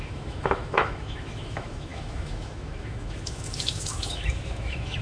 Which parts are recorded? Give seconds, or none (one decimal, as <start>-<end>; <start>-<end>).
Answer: none